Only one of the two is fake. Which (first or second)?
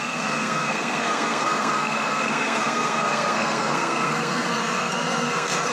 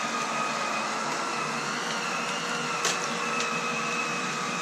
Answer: first